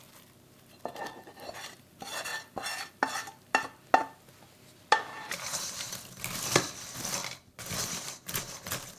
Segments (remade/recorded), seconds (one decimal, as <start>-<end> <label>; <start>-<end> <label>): 0.0-9.0 recorded